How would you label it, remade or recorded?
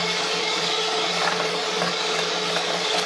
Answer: remade